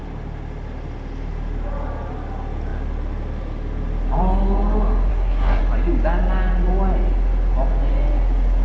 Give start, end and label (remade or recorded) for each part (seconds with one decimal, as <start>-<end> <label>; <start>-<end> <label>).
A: 0.0-5.1 recorded; 5.1-5.6 remade; 5.6-8.6 recorded